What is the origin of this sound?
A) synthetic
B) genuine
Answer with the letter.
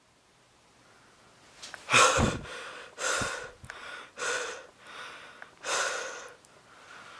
B